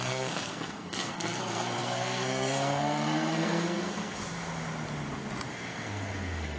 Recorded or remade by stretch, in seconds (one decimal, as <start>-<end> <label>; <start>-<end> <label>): 0.0-4.2 remade; 4.2-5.5 recorded; 5.5-6.6 remade